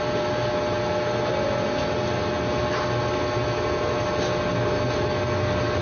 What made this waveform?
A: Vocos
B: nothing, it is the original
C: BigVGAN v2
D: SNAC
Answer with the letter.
B